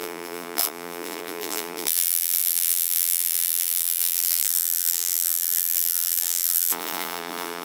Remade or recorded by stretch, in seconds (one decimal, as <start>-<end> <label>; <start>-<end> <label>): 0.0-7.6 remade

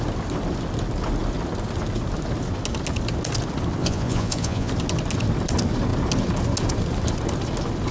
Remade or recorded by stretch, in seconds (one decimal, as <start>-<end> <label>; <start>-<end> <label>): 0.0-3.8 recorded; 3.8-4.7 remade; 4.7-7.9 recorded

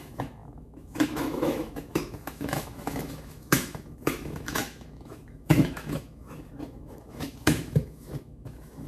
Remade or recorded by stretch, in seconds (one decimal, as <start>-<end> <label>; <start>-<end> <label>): 0.0-8.9 remade

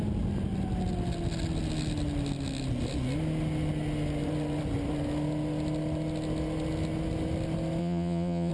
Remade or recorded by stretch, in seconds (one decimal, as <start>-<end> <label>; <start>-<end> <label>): 0.0-7.8 recorded; 7.8-8.5 remade